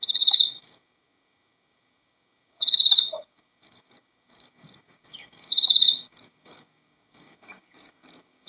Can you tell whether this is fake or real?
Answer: fake